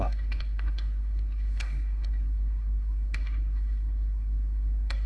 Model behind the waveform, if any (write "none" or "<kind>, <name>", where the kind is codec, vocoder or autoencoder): codec, SNAC